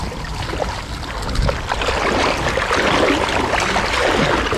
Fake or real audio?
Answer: real